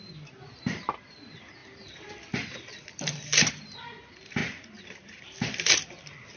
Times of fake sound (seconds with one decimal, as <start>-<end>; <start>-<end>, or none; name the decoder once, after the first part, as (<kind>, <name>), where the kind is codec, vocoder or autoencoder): 0.0-6.4 (vocoder, BigVGAN v2)